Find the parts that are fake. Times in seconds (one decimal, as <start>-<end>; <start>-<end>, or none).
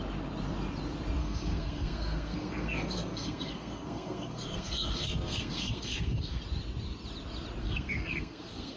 1.2-6.4; 7.6-8.8